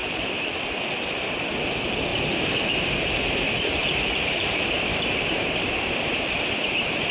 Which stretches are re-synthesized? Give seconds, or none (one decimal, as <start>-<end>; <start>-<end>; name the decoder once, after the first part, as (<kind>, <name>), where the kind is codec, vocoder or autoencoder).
0.0-0.6 (vocoder, BigVGAN v2); 3.8-5.5